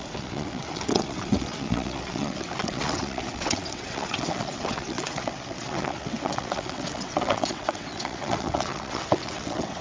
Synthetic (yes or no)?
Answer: yes